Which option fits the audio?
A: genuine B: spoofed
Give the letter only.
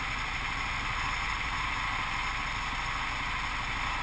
A